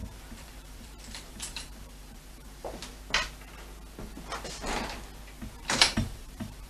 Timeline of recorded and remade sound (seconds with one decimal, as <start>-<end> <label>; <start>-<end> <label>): 0.0-2.8 remade; 2.8-5.6 recorded; 5.6-6.7 remade